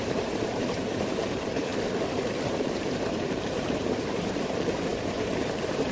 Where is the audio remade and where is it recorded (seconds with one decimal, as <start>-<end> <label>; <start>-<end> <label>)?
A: 0.0-1.7 remade; 1.7-2.5 recorded; 2.5-5.9 remade